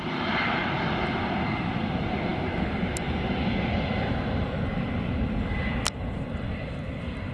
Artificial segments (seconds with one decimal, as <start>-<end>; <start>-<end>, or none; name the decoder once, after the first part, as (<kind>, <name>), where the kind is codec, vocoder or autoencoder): none